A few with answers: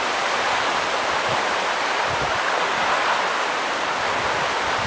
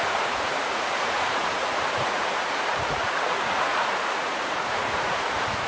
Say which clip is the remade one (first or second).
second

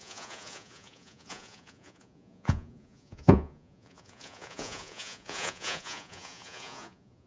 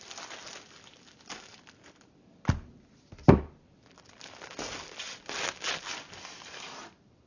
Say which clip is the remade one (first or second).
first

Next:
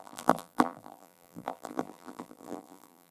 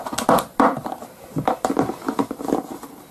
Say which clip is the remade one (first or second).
first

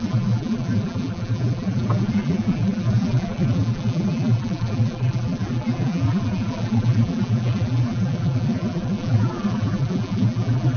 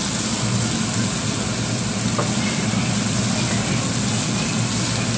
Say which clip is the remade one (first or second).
first